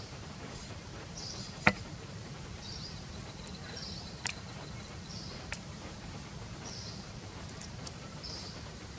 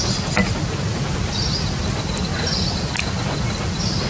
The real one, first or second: second